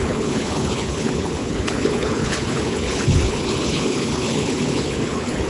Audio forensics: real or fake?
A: fake